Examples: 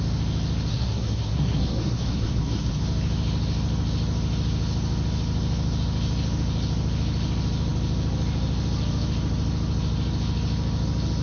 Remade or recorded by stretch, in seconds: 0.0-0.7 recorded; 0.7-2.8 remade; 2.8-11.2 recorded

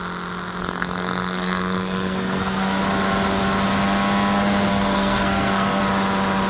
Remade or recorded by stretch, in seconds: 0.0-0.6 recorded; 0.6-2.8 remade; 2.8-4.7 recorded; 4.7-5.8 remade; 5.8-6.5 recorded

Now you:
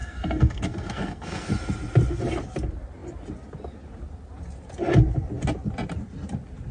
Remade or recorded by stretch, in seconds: 0.0-1.5 remade; 1.5-6.7 recorded